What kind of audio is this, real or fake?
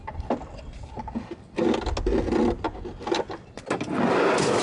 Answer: real